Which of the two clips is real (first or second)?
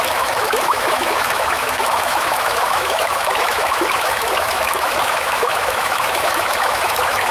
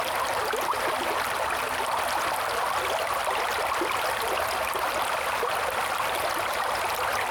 second